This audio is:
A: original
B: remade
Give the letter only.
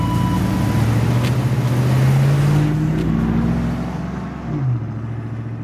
A